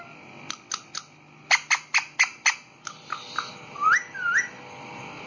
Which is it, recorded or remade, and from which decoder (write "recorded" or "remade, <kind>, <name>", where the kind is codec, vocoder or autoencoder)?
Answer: recorded